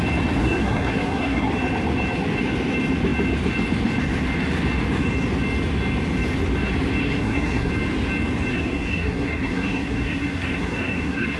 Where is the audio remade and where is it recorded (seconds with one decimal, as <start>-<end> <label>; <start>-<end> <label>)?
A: 0.0-0.4 recorded; 0.4-1.5 remade; 1.5-7.0 recorded; 7.0-7.7 remade; 7.7-8.5 recorded; 8.5-11.4 remade